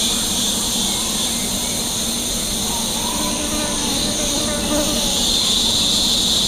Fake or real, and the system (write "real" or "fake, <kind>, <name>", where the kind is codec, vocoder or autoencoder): real